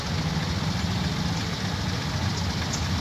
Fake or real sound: real